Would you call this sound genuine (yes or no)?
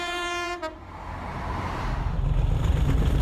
no